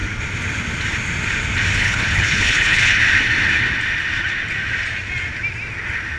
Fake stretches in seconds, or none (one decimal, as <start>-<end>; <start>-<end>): 1.8-3.0